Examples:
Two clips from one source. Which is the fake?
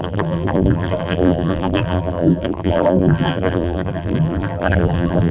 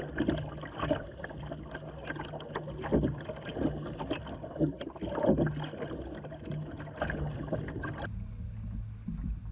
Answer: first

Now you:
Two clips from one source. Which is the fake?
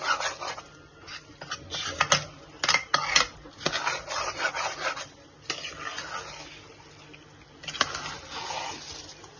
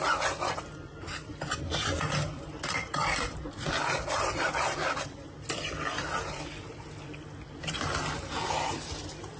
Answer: second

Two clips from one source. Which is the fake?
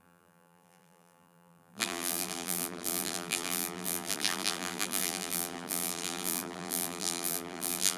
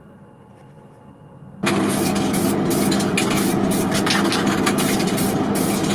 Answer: first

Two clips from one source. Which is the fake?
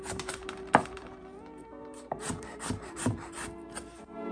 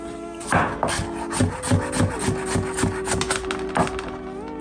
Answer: first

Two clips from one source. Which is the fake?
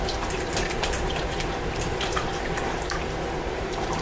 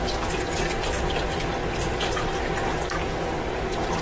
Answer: first